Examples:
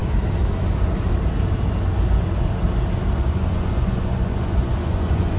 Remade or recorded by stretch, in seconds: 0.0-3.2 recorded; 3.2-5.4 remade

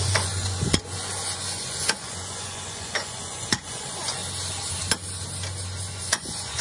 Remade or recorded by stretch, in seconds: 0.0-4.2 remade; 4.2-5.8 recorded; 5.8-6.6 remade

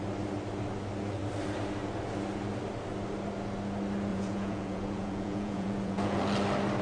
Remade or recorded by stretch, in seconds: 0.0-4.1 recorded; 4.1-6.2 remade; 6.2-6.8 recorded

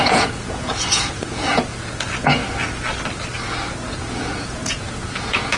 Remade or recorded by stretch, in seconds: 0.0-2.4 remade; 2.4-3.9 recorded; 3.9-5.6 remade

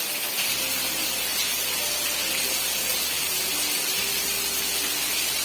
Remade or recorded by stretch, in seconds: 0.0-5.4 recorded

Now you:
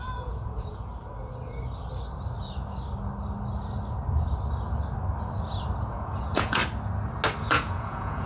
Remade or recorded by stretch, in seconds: 0.0-0.9 remade; 0.9-5.9 recorded; 5.9-6.6 remade; 6.6-7.4 recorded; 7.4-8.3 remade

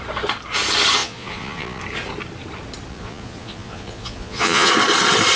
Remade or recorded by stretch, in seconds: 0.0-1.0 recorded; 1.0-1.8 remade; 1.8-2.9 recorded; 2.9-4.7 remade; 4.7-5.4 recorded